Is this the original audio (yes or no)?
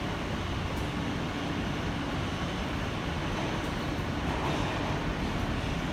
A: yes